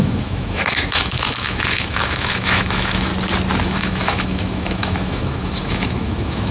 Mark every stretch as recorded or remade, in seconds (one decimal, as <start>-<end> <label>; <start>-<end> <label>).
0.0-3.1 remade; 3.1-3.6 recorded; 3.6-6.5 remade

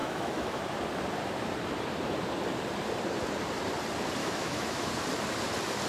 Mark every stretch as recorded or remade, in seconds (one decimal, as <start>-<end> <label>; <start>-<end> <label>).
0.0-0.6 remade; 0.6-4.2 recorded; 4.2-4.9 remade; 4.9-5.9 recorded

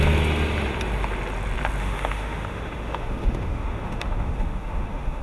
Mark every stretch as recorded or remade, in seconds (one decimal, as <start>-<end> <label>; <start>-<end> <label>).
0.0-1.8 recorded; 1.8-5.2 remade